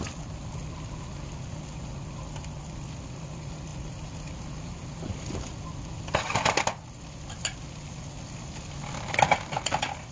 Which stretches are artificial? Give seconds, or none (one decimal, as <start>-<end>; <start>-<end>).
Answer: none